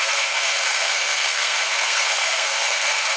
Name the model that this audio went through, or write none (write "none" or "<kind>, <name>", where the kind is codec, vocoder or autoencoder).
codec, SNAC